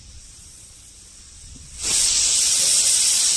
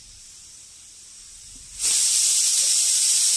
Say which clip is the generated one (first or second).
first